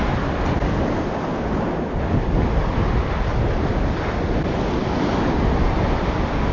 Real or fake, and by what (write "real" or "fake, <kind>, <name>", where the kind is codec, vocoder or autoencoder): real